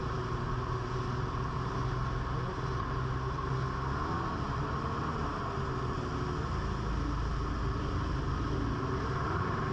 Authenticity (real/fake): real